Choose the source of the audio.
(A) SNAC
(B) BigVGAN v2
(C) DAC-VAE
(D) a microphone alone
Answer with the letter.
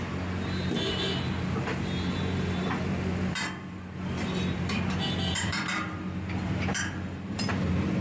B